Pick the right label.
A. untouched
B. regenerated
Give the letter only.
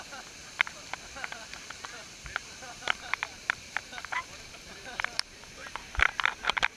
B